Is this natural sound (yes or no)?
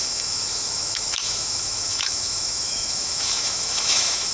no